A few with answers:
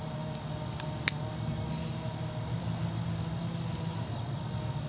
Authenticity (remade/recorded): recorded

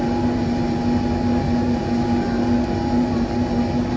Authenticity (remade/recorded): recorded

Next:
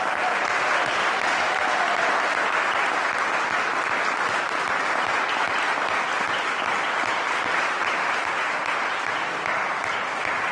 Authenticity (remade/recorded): remade